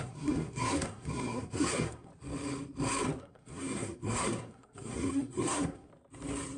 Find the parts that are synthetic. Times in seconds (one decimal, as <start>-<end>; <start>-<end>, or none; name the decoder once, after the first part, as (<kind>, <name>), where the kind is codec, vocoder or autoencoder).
0.0-2.1 (codec, SNAC); 3.2-5.9